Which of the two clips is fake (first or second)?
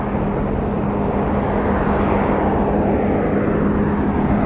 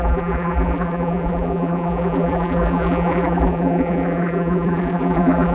second